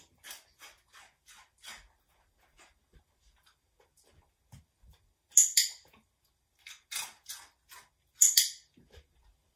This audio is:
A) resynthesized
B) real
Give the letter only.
B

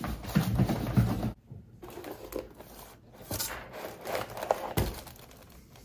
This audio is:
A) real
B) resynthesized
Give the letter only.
A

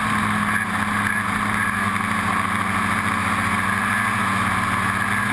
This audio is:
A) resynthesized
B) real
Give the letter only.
B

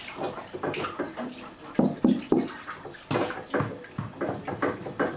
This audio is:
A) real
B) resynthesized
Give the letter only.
A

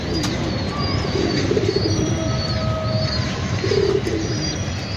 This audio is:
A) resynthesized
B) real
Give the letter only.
B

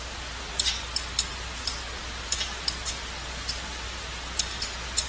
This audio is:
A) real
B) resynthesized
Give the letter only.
A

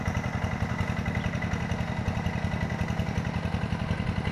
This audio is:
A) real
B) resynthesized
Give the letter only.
A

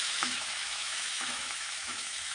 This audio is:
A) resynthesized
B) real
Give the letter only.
A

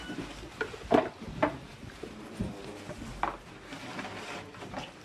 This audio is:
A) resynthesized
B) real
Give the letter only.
B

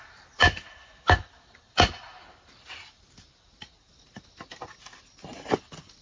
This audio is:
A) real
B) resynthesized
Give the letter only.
A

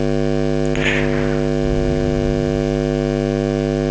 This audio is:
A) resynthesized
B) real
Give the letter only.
B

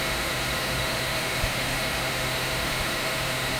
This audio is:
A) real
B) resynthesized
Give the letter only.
B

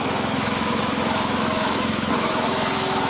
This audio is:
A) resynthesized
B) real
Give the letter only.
A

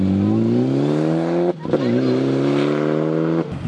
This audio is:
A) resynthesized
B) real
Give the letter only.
B